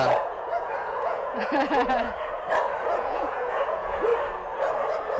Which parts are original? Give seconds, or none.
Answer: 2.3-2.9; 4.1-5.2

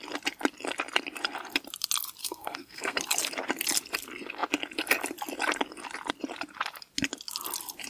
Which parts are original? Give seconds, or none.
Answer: 0.0-2.2; 3.0-7.9

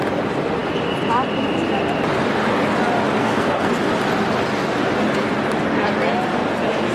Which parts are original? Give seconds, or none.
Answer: 0.0-3.2; 3.7-6.9

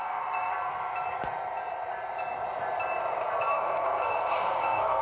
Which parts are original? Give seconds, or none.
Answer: 0.5-3.5

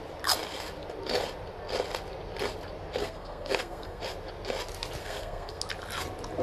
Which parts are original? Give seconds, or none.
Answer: 0.0-3.0; 4.0-5.0; 5.6-6.4

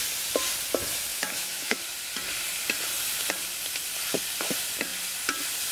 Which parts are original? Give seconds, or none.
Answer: 0.0-1.1; 1.8-5.7